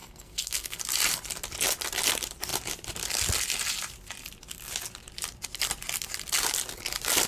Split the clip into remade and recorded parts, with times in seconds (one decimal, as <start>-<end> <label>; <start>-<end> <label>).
0.0-0.8 remade; 0.8-7.3 recorded